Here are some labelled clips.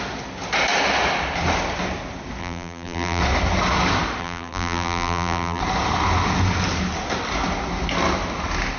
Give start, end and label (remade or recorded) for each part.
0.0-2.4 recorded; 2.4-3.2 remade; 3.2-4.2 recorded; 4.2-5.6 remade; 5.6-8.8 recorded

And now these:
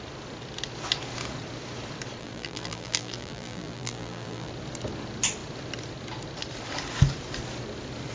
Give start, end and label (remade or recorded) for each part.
0.0-2.2 recorded; 2.2-4.5 remade; 4.5-8.1 recorded

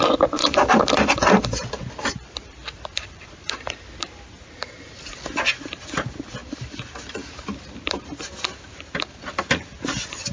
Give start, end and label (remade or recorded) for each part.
0.0-0.4 recorded; 0.4-4.1 remade; 4.1-6.4 recorded; 6.4-8.0 remade; 8.0-10.3 recorded

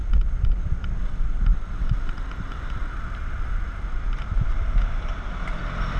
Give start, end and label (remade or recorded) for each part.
0.0-3.0 remade; 3.0-6.0 recorded